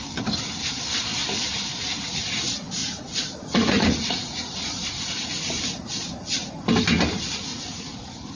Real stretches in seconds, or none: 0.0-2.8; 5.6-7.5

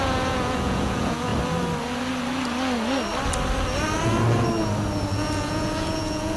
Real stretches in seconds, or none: 1.3-5.1

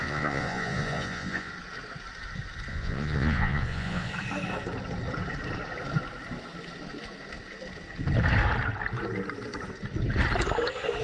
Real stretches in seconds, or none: 1.5-2.7; 4.1-11.0

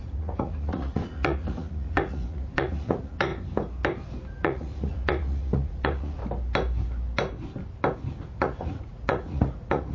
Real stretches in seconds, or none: 3.3-4.3; 6.2-8.4

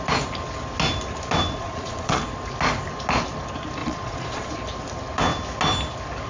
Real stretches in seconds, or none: 0.0-1.6; 2.2-3.8; 4.5-6.3

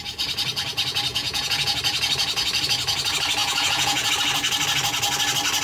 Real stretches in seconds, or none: 0.0-1.1; 1.8-3.4; 4.1-5.6